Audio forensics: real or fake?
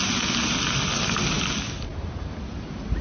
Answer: real